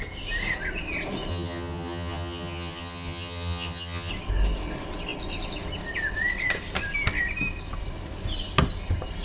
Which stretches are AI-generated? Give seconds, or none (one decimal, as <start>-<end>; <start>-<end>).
1.3-4.1